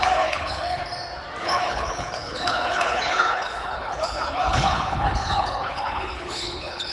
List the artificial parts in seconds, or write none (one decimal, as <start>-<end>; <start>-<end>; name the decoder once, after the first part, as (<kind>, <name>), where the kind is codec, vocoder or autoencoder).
0.0-0.8 (codec, HILCodec); 1.4-6.9